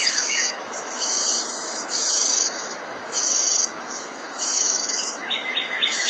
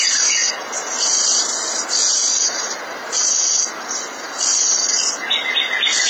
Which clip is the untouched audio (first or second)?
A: second